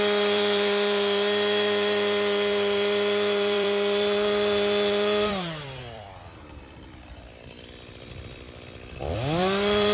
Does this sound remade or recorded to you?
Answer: remade